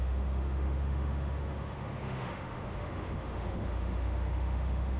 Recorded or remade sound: remade